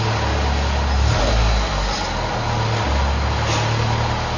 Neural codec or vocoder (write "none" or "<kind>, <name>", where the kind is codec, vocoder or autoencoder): none